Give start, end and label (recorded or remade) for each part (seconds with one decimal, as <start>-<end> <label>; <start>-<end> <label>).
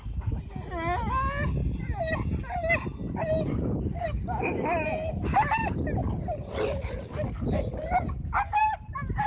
0.0-9.3 recorded